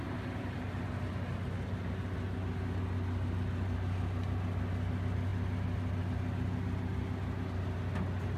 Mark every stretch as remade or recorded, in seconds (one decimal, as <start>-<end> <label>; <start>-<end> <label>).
0.0-8.4 recorded

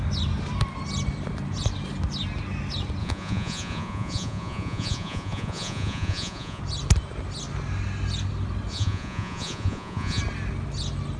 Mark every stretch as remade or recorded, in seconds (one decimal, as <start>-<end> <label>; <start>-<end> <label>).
0.0-3.0 recorded; 3.0-6.6 remade; 6.6-8.7 recorded; 8.7-10.2 remade; 10.2-11.2 recorded

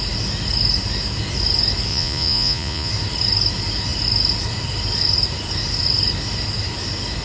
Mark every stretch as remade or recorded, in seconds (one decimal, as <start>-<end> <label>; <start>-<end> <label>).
0.0-1.9 recorded; 1.9-2.9 remade; 2.9-7.2 recorded

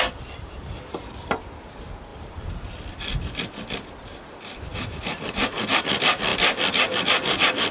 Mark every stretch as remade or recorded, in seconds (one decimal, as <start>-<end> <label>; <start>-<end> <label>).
0.0-2.1 recorded; 2.1-2.7 remade; 2.7-4.7 recorded; 4.7-5.8 remade; 5.8-7.7 recorded

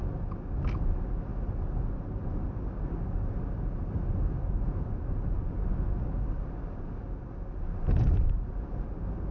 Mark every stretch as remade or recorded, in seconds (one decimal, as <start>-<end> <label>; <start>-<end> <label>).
0.0-9.3 recorded